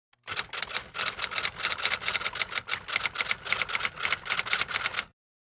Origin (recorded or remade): recorded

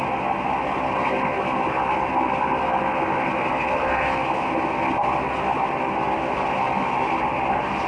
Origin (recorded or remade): recorded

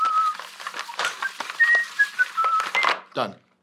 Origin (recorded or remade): recorded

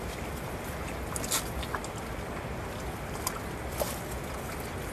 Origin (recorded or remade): recorded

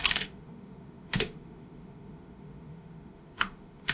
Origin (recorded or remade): remade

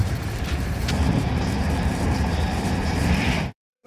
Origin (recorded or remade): remade